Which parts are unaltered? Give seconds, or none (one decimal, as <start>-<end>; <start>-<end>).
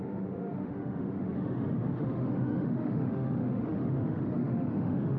none